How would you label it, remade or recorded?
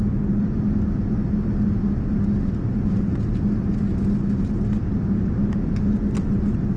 recorded